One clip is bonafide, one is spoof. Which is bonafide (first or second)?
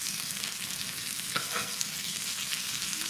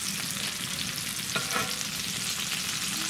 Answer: second